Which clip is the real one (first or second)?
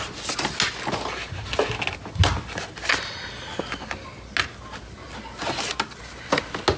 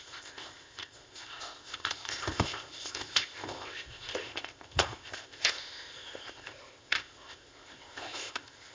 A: first